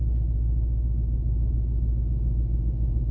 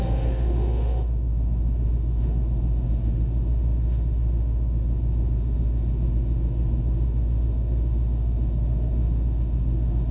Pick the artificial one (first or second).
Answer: second